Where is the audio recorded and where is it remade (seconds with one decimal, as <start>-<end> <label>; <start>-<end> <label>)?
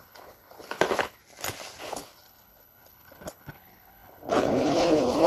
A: 0.0-1.2 remade; 1.2-1.8 recorded; 1.8-5.3 remade